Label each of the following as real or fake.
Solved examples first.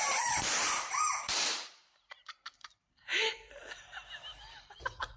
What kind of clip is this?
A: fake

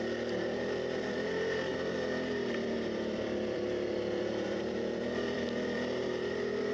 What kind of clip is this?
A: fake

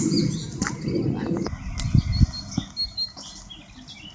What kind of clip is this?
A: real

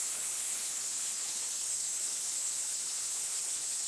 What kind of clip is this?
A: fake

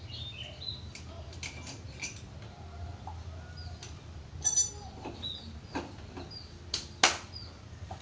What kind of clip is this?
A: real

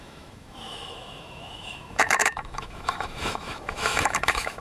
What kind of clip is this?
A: fake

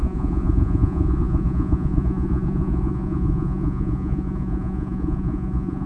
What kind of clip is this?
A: fake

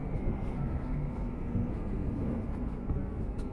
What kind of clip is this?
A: fake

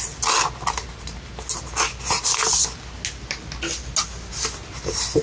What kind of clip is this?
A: real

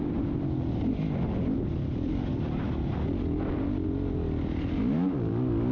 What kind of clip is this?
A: real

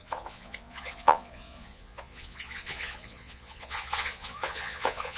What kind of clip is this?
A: fake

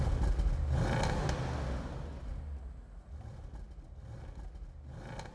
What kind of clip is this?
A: real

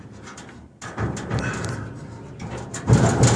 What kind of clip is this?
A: real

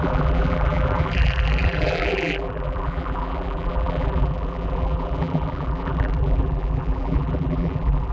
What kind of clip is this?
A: fake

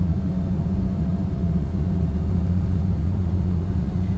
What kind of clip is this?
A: fake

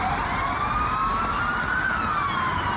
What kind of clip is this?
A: real